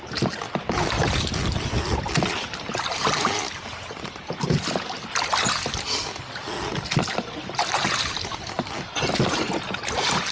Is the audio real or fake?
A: real